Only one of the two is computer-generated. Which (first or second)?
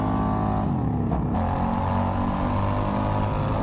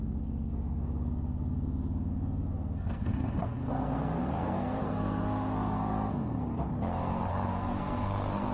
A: second